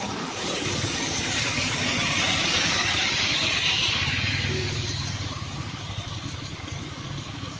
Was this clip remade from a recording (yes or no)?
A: yes